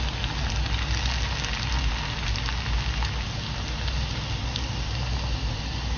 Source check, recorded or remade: recorded